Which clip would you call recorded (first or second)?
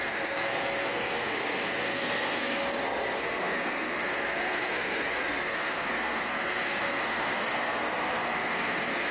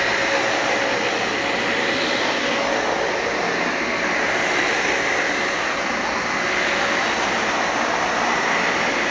second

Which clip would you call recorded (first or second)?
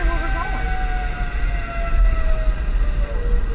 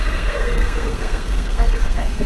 first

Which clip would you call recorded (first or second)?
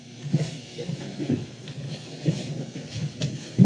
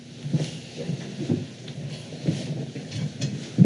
second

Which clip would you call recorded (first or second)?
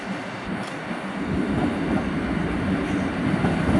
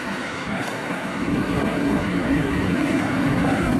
first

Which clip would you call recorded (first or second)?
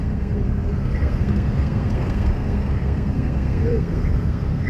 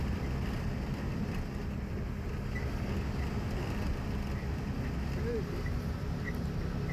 second